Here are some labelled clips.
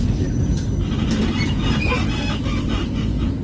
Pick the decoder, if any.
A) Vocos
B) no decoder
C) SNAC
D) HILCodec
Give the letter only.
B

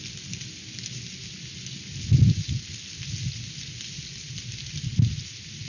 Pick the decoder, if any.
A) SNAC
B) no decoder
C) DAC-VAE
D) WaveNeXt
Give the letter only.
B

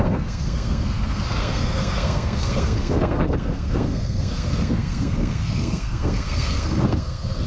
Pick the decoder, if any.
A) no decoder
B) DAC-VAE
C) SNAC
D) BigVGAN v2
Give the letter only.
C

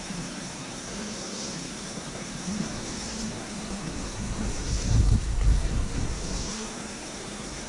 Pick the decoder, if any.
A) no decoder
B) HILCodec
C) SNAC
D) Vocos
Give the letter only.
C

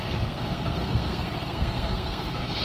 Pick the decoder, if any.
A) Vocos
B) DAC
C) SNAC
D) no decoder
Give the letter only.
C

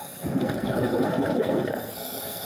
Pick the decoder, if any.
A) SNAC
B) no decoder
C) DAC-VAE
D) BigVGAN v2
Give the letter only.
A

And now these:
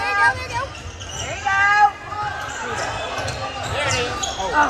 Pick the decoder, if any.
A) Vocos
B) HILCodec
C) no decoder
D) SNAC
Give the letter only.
C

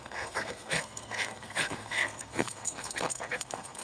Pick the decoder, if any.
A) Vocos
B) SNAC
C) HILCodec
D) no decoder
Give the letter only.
B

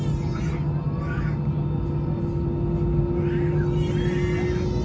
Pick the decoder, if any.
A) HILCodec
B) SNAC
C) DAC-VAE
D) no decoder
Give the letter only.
D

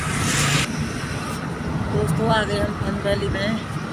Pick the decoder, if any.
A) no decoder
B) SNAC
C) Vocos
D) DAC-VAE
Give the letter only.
A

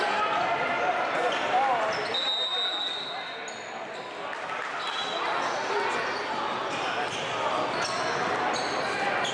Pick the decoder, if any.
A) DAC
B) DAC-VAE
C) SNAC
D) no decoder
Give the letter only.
D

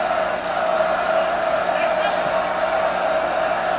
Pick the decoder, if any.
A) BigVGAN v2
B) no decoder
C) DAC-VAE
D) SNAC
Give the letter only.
B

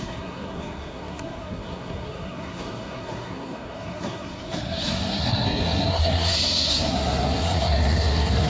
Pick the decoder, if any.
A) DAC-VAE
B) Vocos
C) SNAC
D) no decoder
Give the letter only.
C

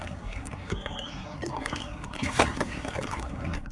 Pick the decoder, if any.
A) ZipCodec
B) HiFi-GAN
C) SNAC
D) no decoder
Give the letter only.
C